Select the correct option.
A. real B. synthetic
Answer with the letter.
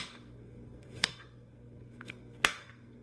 B